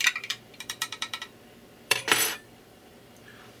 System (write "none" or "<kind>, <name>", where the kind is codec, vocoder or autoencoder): vocoder, BigVGAN v2